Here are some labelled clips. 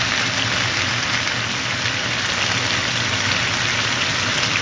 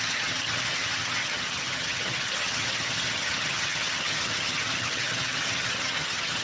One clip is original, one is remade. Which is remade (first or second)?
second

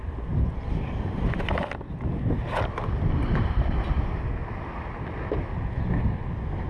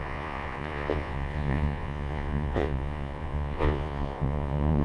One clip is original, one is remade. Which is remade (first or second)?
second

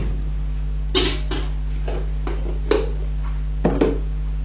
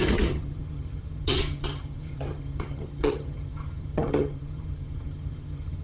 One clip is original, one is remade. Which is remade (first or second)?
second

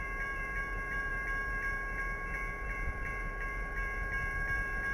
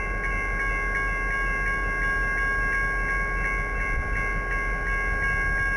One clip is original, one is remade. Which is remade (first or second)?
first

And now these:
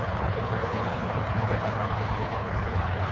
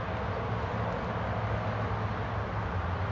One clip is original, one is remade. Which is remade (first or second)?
first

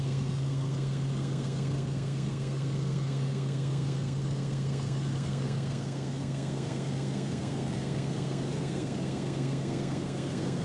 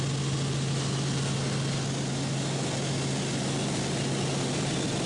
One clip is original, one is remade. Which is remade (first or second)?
first